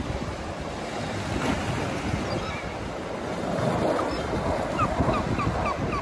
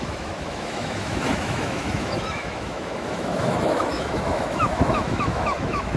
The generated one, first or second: second